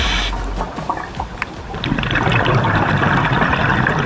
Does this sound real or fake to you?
real